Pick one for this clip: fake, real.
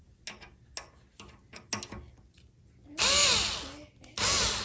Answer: real